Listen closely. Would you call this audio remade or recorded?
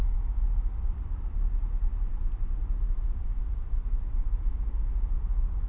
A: recorded